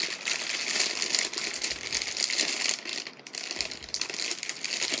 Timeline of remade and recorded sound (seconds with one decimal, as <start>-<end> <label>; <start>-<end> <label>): 0.0-5.0 recorded

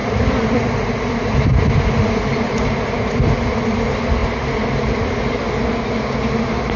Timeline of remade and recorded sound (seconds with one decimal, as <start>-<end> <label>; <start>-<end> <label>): 0.0-3.2 remade; 3.2-6.8 recorded

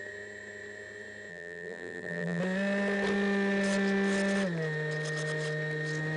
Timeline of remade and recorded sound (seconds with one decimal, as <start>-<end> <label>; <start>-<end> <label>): 0.0-1.3 recorded; 1.3-2.4 remade; 2.4-6.2 recorded

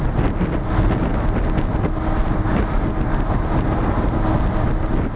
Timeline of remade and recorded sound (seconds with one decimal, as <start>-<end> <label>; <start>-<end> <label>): 0.0-5.2 recorded